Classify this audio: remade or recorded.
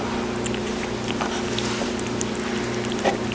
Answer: recorded